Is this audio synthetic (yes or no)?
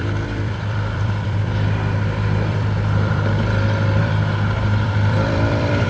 yes